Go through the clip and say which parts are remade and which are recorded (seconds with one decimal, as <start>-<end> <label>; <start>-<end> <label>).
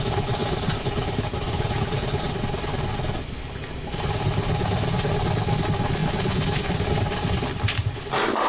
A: 0.0-8.5 recorded